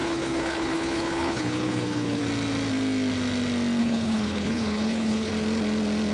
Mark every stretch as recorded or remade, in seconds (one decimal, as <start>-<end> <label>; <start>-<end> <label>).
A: 0.0-2.2 remade; 2.2-3.8 recorded; 3.8-5.3 remade; 5.3-6.1 recorded